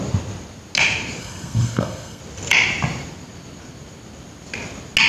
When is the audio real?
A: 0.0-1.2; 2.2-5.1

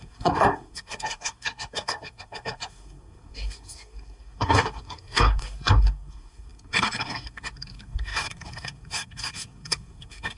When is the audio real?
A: none

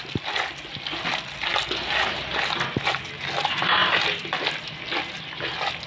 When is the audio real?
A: 0.0-5.9

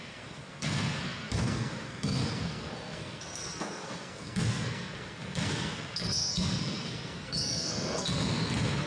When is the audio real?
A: none